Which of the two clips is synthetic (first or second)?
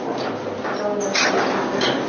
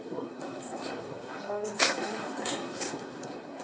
second